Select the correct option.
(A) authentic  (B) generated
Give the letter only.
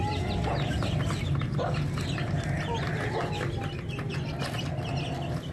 A